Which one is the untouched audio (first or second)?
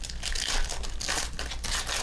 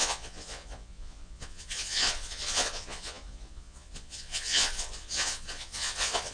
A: first